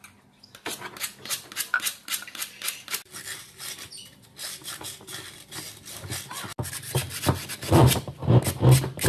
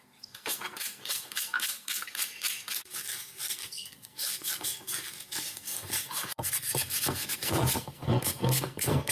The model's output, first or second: second